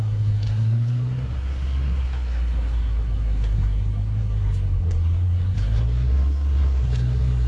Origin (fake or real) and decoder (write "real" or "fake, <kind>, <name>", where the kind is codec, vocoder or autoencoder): fake, codec, SNAC